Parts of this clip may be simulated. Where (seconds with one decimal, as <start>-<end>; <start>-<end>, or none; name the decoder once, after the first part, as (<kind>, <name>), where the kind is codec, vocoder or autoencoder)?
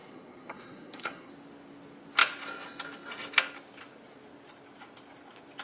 0.0-1.3 (codec, SNAC)